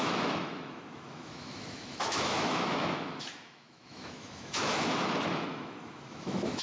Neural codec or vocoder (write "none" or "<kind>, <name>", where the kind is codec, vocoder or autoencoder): autoencoder, DAC-VAE